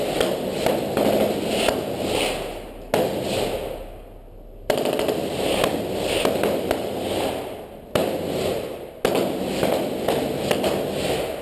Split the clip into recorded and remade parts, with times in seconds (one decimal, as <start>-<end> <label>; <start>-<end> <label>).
0.0-11.4 recorded